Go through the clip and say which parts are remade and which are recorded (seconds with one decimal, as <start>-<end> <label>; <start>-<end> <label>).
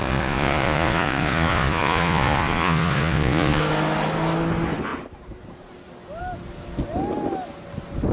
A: 0.0-3.6 remade; 3.6-8.1 recorded